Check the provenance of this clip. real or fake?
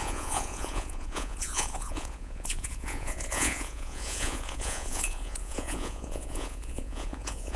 fake